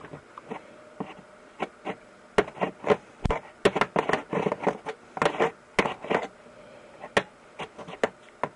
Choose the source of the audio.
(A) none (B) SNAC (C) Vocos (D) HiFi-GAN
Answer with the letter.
A